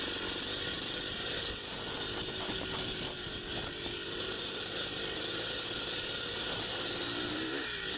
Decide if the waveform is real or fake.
real